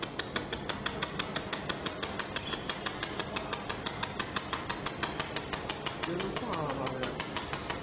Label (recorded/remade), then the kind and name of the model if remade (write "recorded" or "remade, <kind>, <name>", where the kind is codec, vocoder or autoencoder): recorded